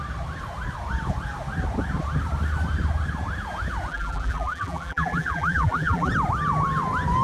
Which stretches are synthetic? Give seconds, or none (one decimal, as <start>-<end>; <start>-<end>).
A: 3.9-6.1

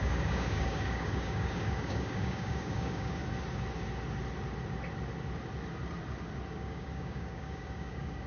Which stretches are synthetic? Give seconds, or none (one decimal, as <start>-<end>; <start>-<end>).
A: 0.0-3.2; 6.5-8.3